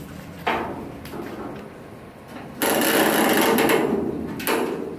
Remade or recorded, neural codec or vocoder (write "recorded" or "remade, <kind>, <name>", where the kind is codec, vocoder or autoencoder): recorded